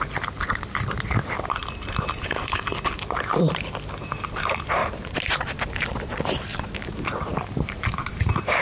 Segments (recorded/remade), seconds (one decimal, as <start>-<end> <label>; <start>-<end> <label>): 0.0-4.8 recorded; 4.8-5.6 remade; 5.6-6.5 recorded; 6.5-8.6 remade